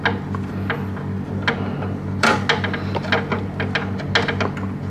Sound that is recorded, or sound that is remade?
recorded